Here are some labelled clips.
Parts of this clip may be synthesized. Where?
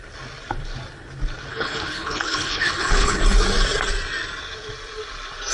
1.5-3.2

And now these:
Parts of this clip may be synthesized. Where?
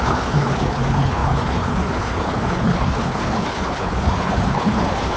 0.0-5.2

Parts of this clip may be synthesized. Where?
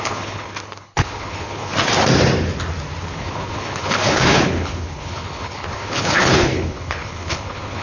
0.0-1.7; 3.0-7.8